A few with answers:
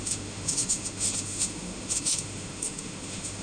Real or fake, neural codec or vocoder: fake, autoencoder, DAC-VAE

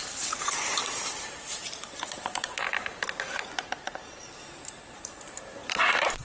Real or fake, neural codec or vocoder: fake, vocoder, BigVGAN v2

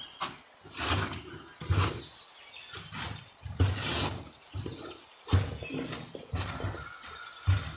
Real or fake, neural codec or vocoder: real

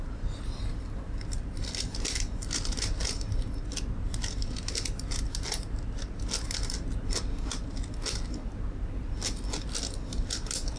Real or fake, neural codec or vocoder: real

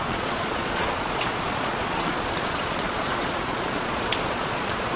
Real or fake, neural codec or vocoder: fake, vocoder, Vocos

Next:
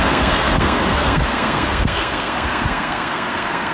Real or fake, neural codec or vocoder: fake, codec, SNAC